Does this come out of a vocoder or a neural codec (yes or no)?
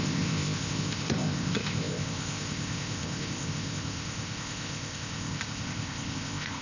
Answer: yes